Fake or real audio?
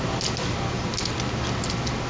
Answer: real